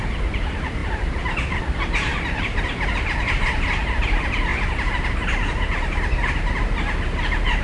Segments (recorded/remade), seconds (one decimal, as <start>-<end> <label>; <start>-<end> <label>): 0.0-4.5 remade; 4.5-7.6 recorded